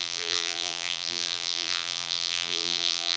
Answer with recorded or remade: remade